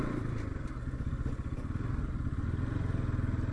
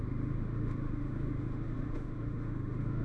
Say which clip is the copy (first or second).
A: second